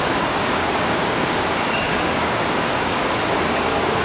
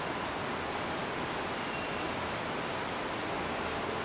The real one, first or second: second